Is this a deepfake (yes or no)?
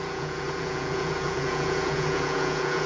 yes